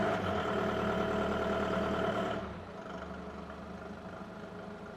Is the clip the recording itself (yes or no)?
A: yes